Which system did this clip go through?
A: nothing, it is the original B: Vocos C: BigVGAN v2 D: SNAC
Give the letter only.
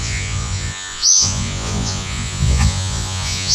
B